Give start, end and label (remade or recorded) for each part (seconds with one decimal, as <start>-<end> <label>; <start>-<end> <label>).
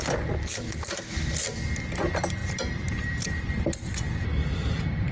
0.0-2.4 recorded; 2.4-3.4 remade; 3.4-4.3 recorded; 4.3-5.1 remade